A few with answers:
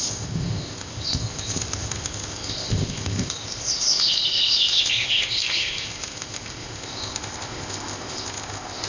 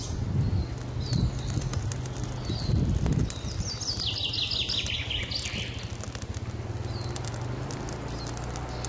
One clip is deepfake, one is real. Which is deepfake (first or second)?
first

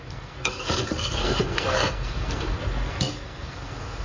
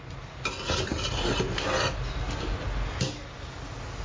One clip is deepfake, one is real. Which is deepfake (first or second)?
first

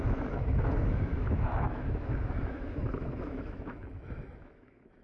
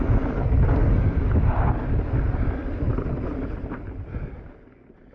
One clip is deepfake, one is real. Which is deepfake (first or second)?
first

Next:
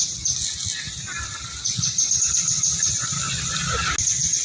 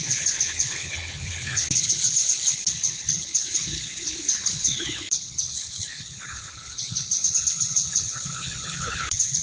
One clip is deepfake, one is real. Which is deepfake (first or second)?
second